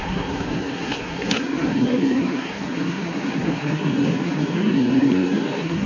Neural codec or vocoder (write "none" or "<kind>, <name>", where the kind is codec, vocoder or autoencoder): codec, SNAC